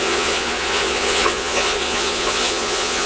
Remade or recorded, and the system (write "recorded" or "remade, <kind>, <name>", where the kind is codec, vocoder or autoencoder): remade, vocoder, Vocos